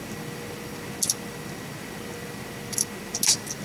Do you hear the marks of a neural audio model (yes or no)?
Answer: no